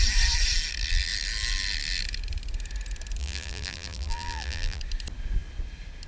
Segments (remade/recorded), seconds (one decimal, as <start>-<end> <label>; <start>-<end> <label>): 0.0-3.2 recorded; 3.2-4.8 remade; 4.8-6.1 recorded